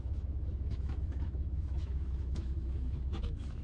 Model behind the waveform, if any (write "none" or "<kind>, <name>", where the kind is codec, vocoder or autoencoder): autoencoder, DAC-VAE